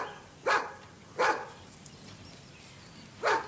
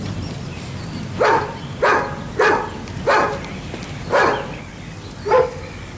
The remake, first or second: first